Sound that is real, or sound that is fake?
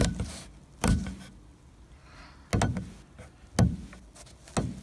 real